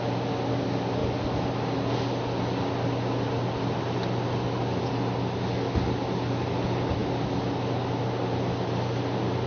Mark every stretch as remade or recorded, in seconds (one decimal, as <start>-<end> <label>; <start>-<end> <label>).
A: 0.0-9.5 recorded